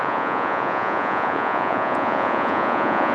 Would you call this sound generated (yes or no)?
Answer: yes